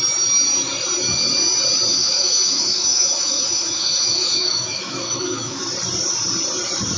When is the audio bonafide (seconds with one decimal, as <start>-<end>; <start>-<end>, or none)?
0.0-1.9; 5.6-7.0